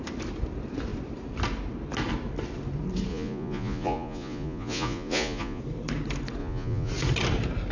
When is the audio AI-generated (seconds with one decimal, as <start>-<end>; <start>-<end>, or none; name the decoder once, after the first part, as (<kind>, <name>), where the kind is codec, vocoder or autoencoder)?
3.1-5.6 (vocoder, Vocos); 6.4-6.9